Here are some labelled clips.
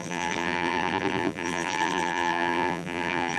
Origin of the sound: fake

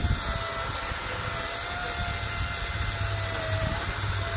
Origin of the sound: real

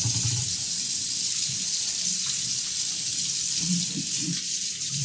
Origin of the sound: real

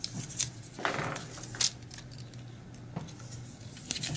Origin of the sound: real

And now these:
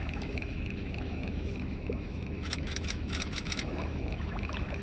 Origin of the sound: fake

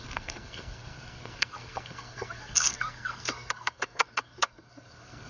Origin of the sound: fake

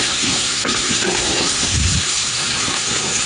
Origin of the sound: fake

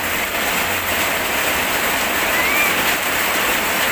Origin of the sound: real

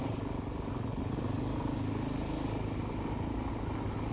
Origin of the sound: real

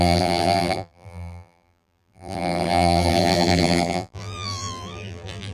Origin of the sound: fake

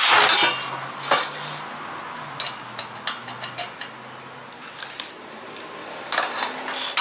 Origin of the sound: real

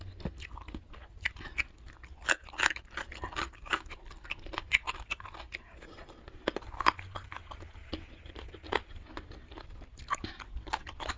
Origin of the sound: real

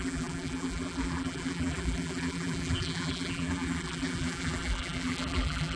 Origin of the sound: fake